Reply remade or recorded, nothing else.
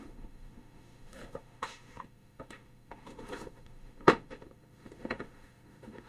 remade